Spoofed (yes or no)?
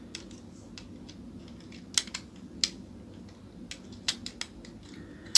no